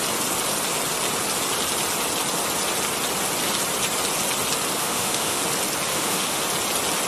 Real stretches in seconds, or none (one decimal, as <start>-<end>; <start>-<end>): 0.0-4.8; 5.4-5.9; 6.4-7.1